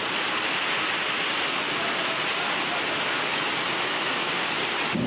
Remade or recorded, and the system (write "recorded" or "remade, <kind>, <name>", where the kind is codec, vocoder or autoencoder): recorded